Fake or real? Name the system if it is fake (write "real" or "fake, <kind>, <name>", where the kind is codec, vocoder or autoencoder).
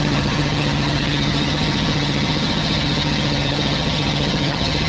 fake, vocoder, HiFi-GAN